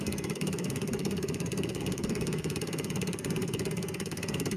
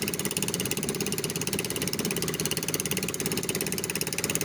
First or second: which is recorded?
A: second